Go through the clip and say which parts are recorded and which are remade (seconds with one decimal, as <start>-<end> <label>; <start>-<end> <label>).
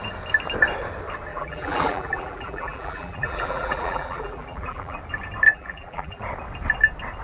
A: 0.0-1.3 recorded; 1.3-5.0 remade; 5.0-5.5 recorded; 5.5-6.2 remade; 6.2-7.2 recorded